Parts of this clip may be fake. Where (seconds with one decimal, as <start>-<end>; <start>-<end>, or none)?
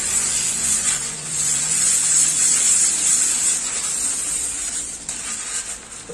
0.0-2.7